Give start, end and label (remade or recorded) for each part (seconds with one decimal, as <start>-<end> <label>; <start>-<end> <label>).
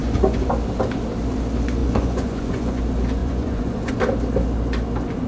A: 0.0-0.5 remade; 0.5-1.8 recorded; 1.8-2.8 remade; 2.8-3.2 recorded; 3.2-3.9 remade; 3.9-5.3 recorded